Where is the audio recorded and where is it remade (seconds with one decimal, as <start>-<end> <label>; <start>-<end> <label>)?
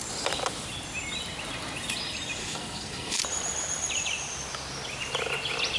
0.0-2.4 recorded; 2.4-3.2 remade; 3.2-5.8 recorded